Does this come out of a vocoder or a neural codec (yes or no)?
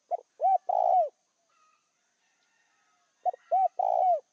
no